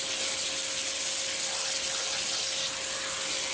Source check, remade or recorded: recorded